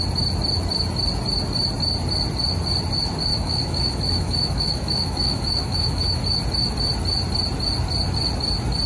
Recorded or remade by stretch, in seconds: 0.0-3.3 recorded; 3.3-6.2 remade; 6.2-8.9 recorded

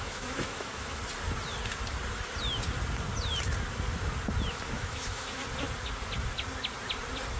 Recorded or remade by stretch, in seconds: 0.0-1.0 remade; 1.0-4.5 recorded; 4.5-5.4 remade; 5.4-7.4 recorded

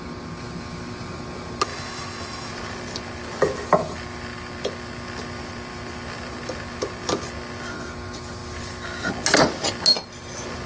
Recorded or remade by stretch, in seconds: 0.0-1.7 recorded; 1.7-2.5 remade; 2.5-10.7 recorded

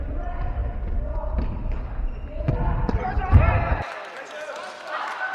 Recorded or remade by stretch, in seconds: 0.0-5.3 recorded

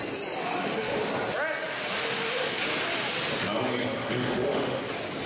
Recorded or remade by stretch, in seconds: 0.0-0.4 recorded; 0.4-1.1 remade; 1.1-2.0 recorded; 2.0-2.6 remade; 2.6-4.0 recorded; 4.0-4.8 remade; 4.8-5.3 recorded

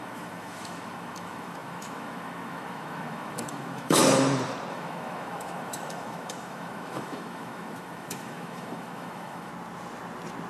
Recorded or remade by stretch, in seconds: 0.0-4.0 remade; 4.0-4.7 recorded; 4.7-9.5 remade; 9.5-10.5 recorded